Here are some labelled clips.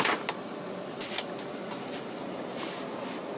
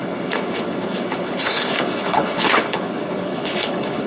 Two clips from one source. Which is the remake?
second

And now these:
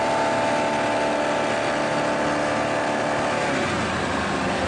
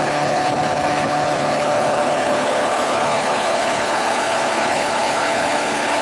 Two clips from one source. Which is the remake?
second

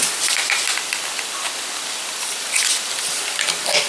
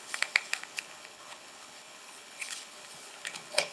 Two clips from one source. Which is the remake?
second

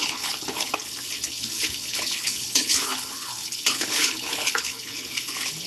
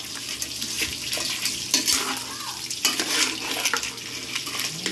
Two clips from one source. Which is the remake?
first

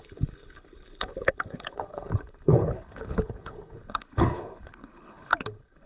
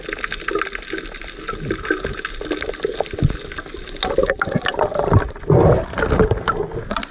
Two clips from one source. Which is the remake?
first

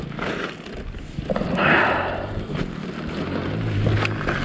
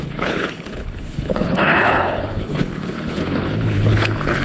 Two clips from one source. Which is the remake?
second